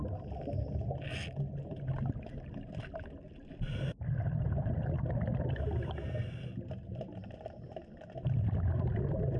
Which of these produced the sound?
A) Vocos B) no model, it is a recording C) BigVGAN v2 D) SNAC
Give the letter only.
B